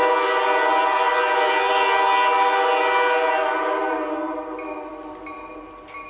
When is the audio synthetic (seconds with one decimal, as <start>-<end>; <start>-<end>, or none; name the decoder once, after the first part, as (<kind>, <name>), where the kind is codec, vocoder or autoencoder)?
none